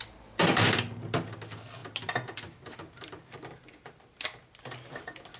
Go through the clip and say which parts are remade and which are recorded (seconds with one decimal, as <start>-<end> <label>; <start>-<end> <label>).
0.0-5.4 recorded